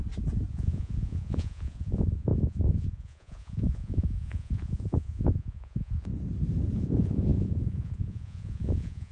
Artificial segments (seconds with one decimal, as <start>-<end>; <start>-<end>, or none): 0.5-6.1; 6.8-9.1